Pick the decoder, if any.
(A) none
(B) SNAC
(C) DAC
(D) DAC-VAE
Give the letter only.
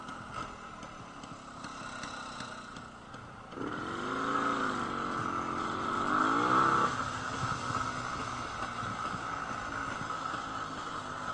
A